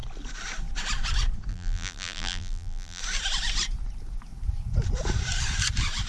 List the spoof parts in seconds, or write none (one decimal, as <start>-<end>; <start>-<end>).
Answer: 1.5-3.0